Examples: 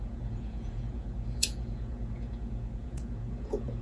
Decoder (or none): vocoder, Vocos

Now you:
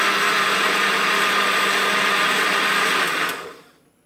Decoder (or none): none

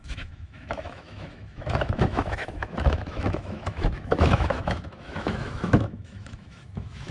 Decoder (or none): autoencoder, DAC-VAE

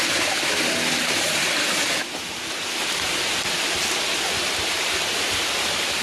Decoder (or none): none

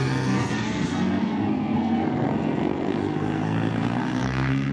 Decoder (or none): codec, SNAC